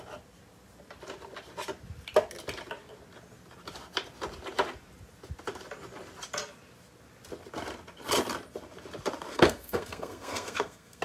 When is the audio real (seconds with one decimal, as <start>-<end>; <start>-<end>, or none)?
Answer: 0.0-9.3